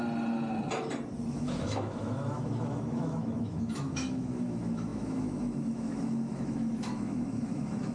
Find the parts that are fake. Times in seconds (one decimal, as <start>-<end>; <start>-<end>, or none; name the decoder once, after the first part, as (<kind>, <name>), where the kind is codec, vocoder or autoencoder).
1.3-7.9 (autoencoder, DAC-VAE)